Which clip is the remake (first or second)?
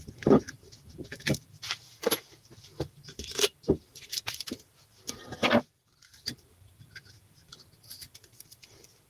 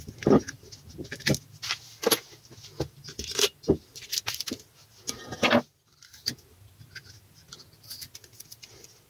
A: first